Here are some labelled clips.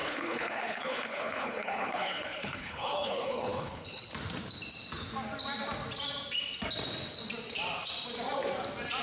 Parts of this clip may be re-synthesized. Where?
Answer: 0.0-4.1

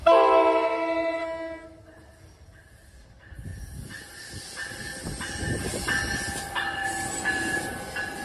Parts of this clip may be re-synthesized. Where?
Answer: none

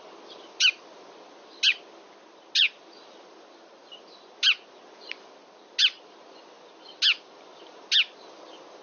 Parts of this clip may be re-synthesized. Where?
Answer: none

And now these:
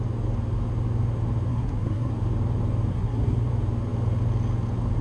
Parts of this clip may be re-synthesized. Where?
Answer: 1.5-2.1; 2.9-3.5

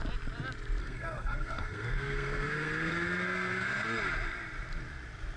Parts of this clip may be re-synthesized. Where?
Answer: 0.8-4.0